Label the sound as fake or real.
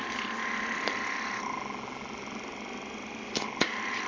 real